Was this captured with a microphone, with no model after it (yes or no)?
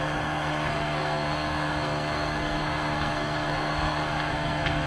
no